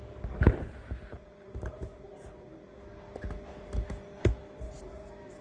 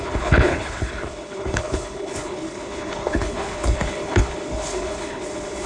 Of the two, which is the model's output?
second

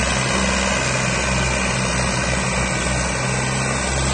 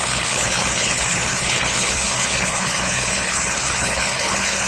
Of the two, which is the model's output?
second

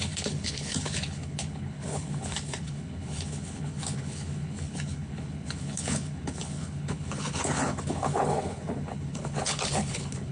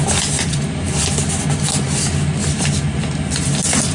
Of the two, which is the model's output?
first